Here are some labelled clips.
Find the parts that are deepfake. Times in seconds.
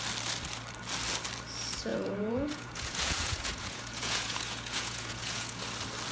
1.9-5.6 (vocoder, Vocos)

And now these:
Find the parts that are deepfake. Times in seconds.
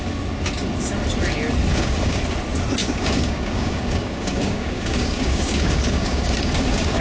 1.7-2.2 (codec, DAC); 2.8-7.0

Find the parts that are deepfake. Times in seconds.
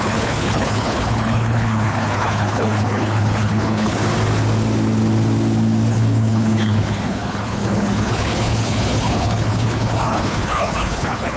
0.0-4.0 (codec, HILCodec); 5.9-11.4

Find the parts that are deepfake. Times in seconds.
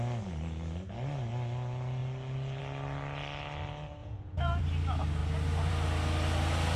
4.0-4.6 (vocoder, Vocos)